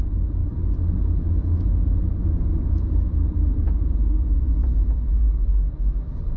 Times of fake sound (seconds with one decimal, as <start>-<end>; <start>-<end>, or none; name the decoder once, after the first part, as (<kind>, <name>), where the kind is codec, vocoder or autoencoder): none